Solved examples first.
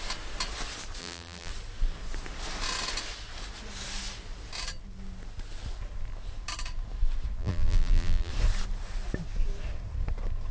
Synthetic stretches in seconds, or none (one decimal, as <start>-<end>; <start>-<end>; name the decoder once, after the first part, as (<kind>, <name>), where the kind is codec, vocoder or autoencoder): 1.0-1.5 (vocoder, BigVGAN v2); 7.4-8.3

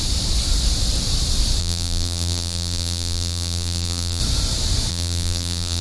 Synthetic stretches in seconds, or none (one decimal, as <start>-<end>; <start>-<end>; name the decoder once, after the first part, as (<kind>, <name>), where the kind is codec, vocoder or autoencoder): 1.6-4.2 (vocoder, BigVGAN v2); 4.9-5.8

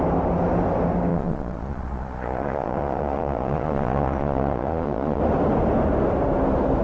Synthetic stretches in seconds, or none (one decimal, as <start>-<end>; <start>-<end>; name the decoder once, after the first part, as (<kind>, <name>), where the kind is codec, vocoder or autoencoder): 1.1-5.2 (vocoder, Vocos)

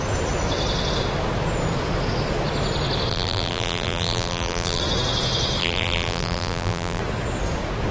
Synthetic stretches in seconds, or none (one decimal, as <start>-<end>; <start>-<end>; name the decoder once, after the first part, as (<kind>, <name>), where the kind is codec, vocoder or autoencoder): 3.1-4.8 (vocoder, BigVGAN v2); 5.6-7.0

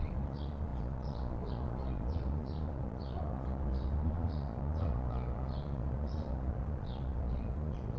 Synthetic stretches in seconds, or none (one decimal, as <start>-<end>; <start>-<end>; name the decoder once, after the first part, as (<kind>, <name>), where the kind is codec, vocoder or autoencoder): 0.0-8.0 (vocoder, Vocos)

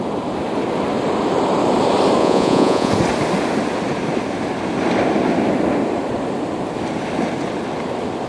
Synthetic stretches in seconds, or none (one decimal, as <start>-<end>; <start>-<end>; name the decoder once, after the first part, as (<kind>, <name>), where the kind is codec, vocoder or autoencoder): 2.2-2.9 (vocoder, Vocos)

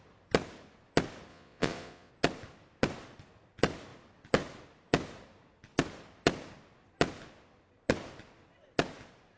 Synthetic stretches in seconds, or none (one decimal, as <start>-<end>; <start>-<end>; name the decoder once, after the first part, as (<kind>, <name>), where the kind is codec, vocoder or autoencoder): 1.3-2.1 (vocoder, Vocos)